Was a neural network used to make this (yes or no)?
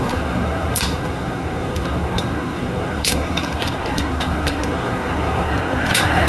yes